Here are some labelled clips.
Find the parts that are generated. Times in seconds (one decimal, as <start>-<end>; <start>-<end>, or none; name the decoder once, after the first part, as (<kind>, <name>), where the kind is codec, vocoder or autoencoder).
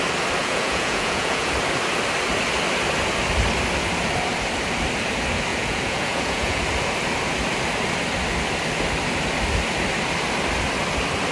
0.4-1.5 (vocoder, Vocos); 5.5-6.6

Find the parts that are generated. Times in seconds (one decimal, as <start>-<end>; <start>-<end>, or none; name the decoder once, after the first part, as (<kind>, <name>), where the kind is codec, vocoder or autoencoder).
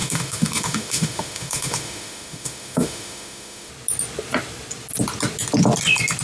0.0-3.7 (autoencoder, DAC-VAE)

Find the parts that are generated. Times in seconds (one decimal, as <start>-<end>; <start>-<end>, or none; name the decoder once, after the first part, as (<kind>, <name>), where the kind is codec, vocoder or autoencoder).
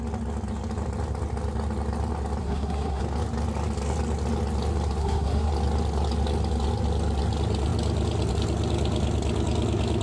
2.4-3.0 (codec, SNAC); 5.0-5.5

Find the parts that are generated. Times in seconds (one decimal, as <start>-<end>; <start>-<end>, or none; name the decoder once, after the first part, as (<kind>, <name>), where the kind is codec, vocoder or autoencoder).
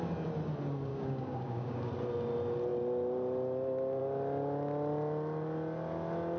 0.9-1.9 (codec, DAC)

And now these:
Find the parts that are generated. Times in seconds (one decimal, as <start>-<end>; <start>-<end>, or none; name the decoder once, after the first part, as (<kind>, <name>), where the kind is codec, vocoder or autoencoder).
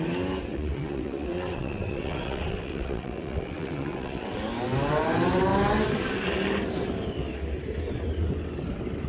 0.5-4.4 (vocoder, WaveNeXt)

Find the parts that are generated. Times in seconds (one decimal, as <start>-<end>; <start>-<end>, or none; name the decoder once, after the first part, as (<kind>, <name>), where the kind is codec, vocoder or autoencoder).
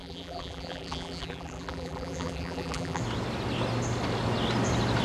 0.0-3.0 (vocoder, BigVGAN v2)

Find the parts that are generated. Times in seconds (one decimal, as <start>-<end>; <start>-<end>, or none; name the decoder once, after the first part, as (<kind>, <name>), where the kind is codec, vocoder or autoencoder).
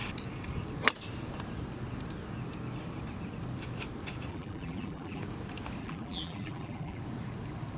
4.3-5.2 (vocoder, BigVGAN v2); 5.8-7.0